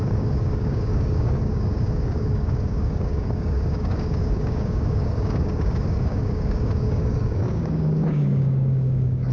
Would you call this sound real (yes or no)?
no